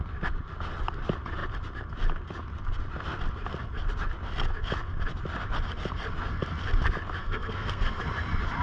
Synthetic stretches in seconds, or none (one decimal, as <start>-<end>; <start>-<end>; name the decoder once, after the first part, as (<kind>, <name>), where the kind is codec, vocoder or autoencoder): 7.2-8.0 (codec, SNAC)